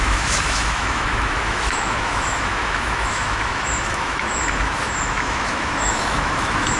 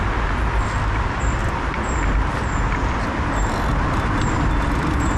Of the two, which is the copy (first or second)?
first